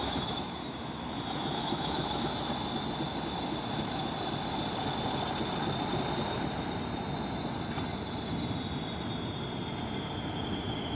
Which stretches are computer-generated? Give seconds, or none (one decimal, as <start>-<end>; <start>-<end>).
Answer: 0.0-2.5